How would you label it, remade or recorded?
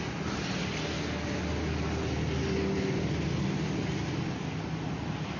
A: recorded